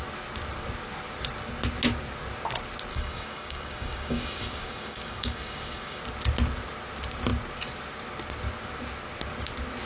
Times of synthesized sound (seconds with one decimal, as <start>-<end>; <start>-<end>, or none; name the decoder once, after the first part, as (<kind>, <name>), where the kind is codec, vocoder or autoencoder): 2.9-6.0 (codec, DAC)